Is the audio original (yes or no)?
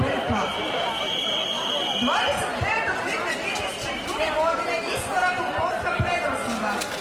yes